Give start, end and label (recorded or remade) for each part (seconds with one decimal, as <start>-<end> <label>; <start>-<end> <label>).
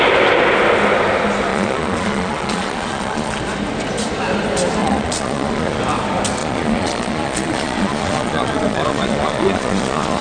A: 0.0-1.5 recorded; 1.5-3.4 remade; 3.4-4.8 recorded; 4.8-5.8 remade; 5.8-6.4 recorded; 6.4-10.2 remade